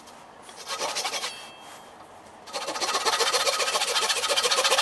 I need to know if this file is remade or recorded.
recorded